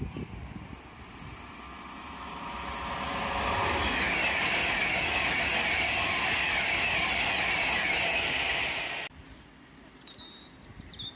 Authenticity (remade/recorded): recorded